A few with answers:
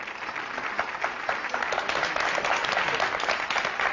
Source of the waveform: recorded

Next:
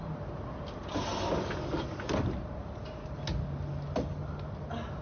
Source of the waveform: recorded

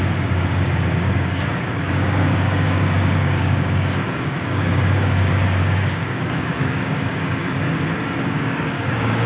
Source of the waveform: remade